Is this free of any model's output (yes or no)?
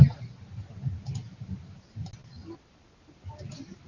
yes